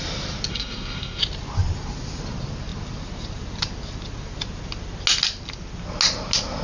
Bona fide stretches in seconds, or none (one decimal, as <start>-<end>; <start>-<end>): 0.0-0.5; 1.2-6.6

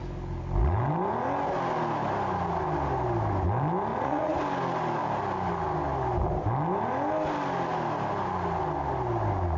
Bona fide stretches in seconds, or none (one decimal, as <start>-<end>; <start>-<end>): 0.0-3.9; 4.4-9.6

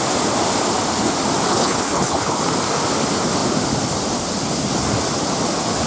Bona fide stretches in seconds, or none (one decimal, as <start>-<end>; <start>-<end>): 0.0-1.5; 2.4-5.9

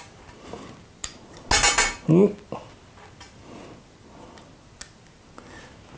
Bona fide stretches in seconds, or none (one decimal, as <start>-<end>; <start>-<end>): 0.0-6.0

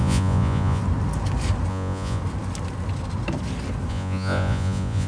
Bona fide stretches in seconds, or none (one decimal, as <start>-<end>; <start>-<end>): 0.8-1.7; 2.2-3.9

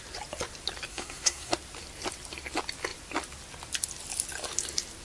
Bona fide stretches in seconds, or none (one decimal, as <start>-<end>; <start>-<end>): 0.0-0.9; 1.5-5.0

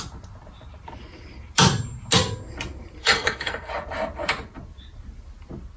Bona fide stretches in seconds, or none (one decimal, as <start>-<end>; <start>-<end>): 0.0-3.0; 3.7-5.8

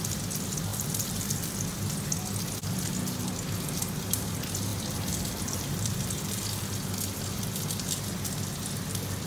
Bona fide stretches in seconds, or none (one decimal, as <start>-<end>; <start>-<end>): 0.0-0.7; 1.5-4.7; 6.3-9.3